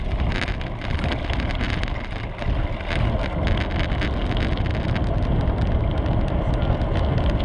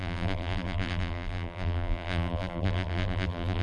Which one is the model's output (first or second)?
second